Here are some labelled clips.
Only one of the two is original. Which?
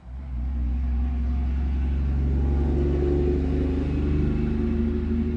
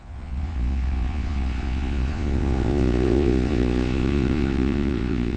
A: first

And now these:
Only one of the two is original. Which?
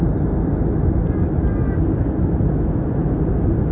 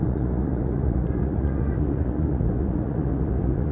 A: first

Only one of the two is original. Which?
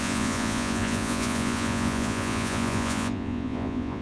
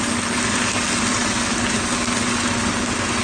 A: second